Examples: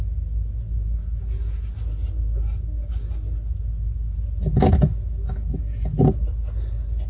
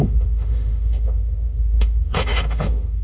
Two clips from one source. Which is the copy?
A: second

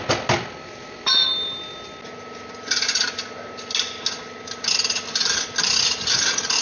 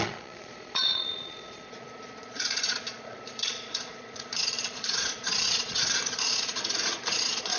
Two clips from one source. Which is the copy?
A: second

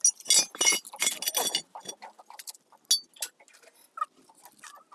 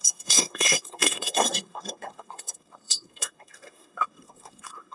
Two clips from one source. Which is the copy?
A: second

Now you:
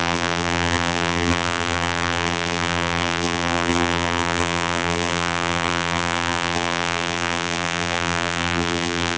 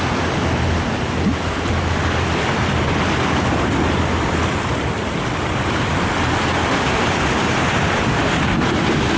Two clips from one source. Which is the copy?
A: first